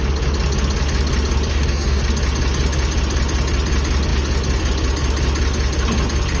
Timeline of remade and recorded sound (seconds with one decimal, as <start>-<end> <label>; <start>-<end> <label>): 0.0-1.5 recorded; 1.5-2.0 remade; 2.0-6.4 recorded